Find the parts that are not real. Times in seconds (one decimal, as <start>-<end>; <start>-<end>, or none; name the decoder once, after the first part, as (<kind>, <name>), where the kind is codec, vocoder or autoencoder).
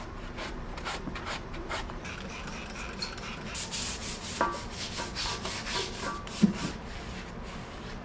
0.0-4.0 (vocoder, BigVGAN v2); 4.9-8.0